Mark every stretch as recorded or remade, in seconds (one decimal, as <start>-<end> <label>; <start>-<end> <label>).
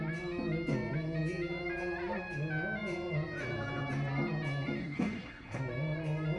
0.0-4.8 recorded; 4.8-5.6 remade; 5.6-6.4 recorded